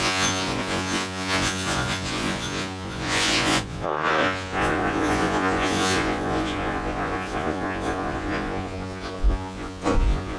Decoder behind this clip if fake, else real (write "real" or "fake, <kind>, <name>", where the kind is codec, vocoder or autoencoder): fake, vocoder, Vocos